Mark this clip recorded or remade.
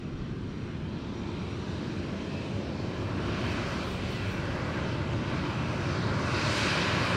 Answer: recorded